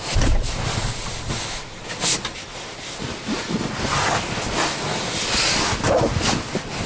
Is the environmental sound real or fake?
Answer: real